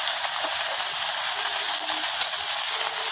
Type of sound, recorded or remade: recorded